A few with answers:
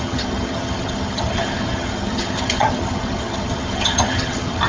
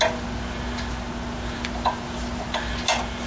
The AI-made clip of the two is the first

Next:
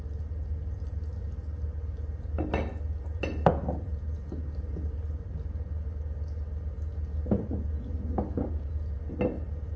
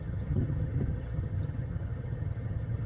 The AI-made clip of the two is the second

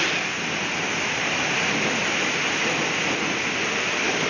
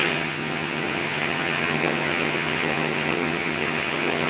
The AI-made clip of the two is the second